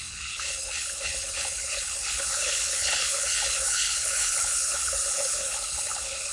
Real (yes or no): no